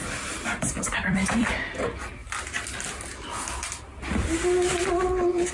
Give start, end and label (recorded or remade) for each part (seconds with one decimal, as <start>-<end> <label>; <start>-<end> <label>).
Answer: 0.0-1.5 remade; 1.5-5.5 recorded

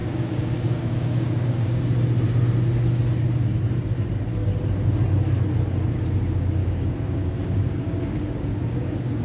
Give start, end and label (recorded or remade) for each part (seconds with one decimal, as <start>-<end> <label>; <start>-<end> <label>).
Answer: 0.0-1.8 remade; 1.8-6.6 recorded; 6.6-9.2 remade